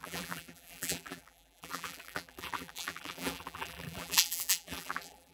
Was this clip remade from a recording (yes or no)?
yes